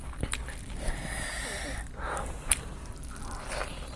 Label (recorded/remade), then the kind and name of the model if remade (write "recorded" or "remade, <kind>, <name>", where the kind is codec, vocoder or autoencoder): recorded